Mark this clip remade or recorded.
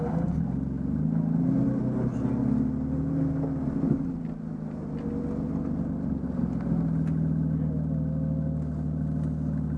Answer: recorded